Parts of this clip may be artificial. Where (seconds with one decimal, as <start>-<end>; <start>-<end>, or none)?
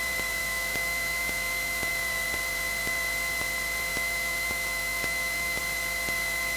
0.4-1.9; 3.9-5.6